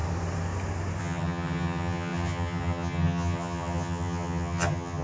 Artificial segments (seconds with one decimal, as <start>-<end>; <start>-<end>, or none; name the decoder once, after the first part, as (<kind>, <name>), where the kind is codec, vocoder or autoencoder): 1.0-5.0 (vocoder, HiFi-GAN)